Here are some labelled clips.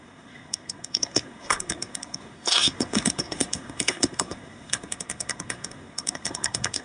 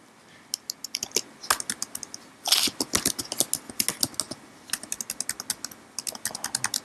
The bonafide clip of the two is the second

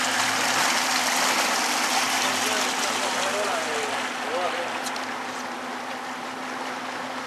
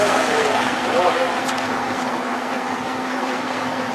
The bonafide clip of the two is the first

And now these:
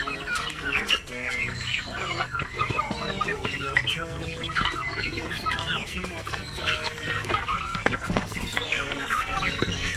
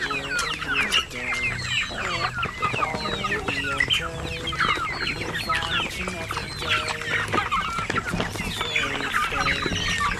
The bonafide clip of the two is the second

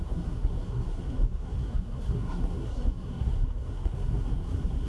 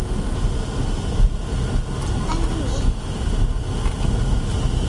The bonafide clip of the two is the second